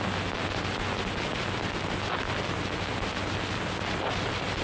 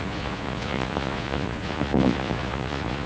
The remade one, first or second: second